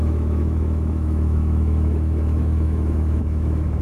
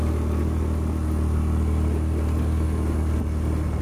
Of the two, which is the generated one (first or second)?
first